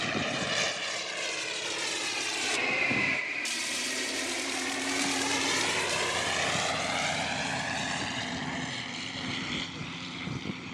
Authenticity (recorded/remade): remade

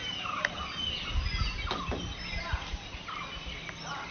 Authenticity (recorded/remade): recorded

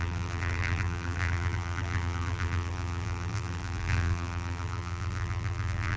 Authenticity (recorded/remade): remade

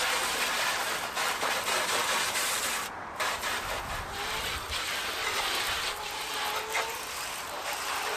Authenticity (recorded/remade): recorded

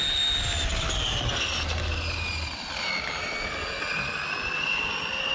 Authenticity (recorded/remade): recorded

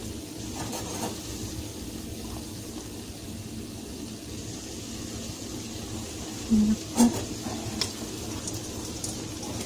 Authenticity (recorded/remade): recorded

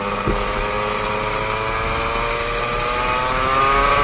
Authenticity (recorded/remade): recorded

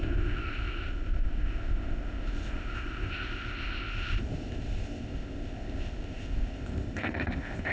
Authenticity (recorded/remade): remade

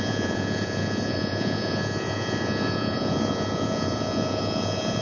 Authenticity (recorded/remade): remade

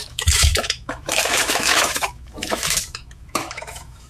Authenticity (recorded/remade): remade